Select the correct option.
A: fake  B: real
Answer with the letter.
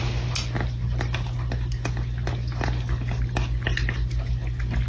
B